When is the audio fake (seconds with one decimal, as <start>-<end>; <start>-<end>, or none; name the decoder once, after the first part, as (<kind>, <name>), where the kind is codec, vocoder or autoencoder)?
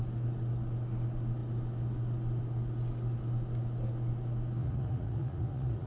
4.6-5.9 (vocoder, Vocos)